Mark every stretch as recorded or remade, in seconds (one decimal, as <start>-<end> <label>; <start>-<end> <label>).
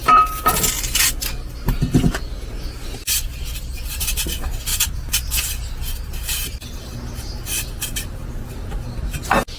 0.0-9.6 recorded